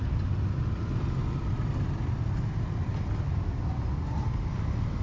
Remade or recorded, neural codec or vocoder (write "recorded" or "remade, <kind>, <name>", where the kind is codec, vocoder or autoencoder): recorded